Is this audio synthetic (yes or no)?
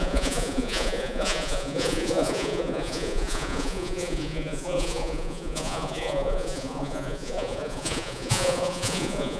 yes